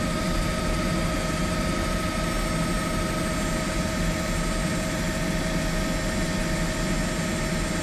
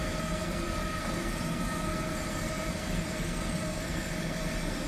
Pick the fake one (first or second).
second